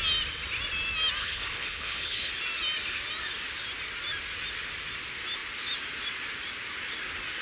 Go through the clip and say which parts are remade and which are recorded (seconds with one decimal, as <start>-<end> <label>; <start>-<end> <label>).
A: 0.0-1.2 recorded; 1.2-2.3 remade; 2.3-7.4 recorded